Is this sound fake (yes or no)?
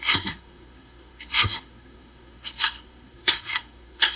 yes